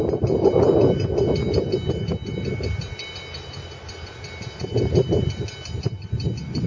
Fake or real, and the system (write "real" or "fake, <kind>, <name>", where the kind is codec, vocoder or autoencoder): real